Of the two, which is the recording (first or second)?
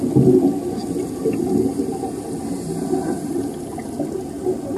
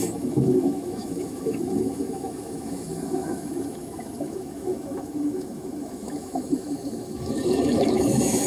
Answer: first